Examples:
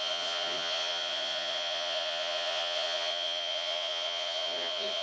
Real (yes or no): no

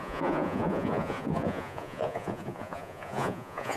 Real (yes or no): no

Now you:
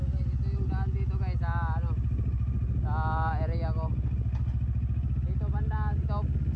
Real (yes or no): yes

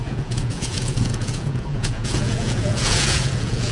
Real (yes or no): no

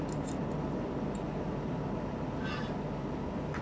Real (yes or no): yes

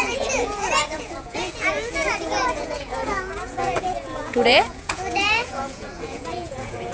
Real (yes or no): no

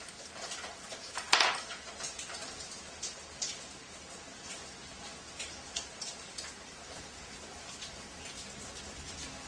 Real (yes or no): yes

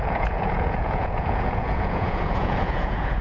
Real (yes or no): no